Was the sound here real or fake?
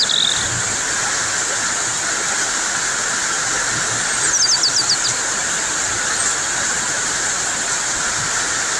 real